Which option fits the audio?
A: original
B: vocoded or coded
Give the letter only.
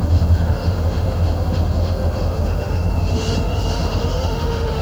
B